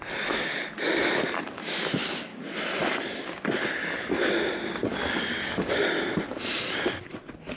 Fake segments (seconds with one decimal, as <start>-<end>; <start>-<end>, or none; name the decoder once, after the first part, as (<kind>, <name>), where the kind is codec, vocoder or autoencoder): 4.8-6.1 (codec, DAC)